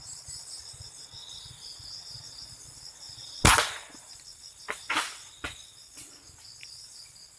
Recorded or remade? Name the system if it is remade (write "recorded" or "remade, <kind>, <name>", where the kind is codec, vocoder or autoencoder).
recorded